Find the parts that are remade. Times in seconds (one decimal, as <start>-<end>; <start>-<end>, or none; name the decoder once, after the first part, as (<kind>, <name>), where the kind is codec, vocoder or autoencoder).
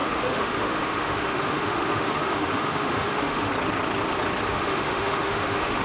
0.0-3.5 (autoencoder, DAC-VAE); 4.5-5.8